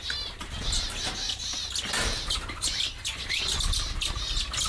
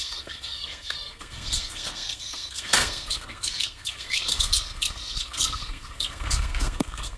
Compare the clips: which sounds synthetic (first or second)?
second